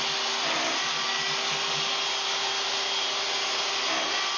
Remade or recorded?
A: recorded